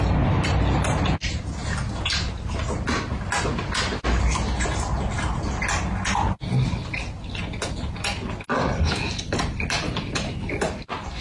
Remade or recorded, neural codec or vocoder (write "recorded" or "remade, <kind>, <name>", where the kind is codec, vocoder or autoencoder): recorded